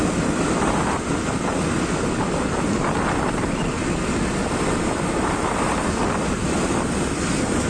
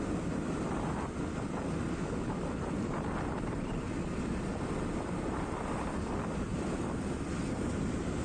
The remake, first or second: second